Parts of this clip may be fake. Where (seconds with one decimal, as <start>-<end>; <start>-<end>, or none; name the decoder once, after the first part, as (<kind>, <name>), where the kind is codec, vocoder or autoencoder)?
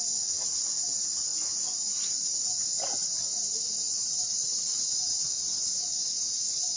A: none